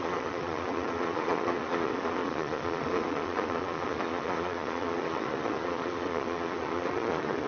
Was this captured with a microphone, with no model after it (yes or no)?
no